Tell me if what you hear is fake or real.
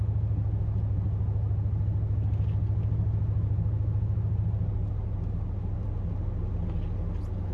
real